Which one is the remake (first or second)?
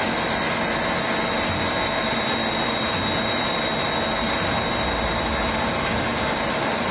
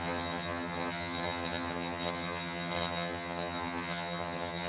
second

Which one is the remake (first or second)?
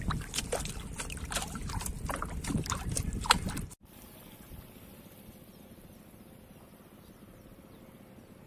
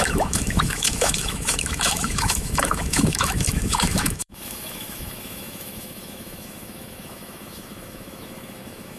second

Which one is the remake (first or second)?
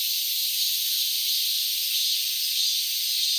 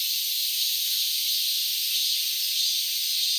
second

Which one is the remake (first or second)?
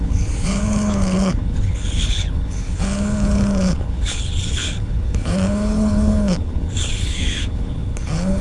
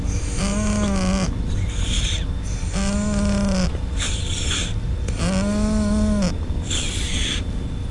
first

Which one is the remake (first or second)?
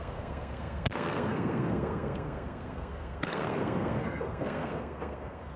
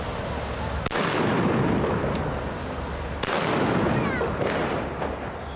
first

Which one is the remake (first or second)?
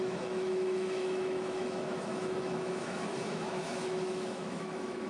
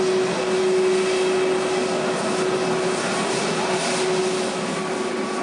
first